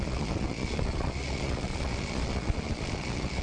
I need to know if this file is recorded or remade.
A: remade